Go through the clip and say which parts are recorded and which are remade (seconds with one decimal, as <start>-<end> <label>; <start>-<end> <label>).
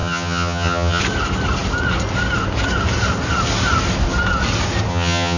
0.0-1.0 remade; 1.0-4.9 recorded; 4.9-5.4 remade